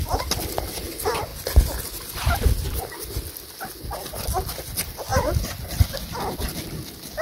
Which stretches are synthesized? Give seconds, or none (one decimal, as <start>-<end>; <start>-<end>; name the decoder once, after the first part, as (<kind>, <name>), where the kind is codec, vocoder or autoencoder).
5.1-6.0 (vocoder, BigVGAN v2)